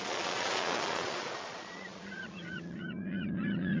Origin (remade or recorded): remade